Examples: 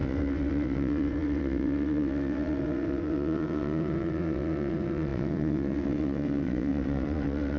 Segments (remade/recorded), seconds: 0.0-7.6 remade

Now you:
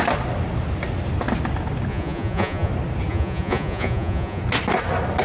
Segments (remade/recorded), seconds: 0.0-1.9 recorded; 1.9-2.7 remade; 2.7-3.1 recorded; 3.1-4.4 remade; 4.4-5.2 recorded